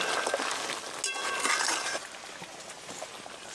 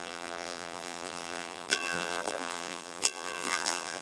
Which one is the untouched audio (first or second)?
first